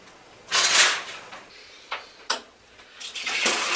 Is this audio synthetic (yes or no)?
yes